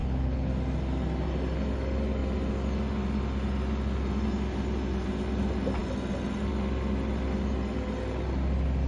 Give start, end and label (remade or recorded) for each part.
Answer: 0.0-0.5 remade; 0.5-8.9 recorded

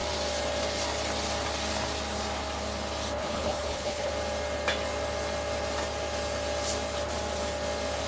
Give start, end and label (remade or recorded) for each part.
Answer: 0.0-3.2 recorded; 3.2-4.1 remade; 4.1-8.1 recorded

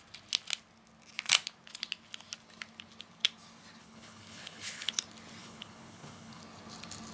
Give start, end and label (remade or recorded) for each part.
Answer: 0.0-3.8 recorded; 3.8-5.0 remade; 5.0-5.4 recorded; 5.4-6.4 remade; 6.4-7.1 recorded

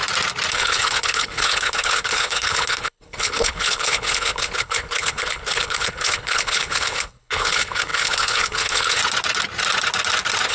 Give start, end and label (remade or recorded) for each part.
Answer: 0.0-0.5 recorded; 0.5-9.0 remade; 9.0-10.5 recorded